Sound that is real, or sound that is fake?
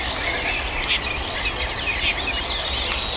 real